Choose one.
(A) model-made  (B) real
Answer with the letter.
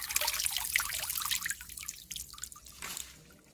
B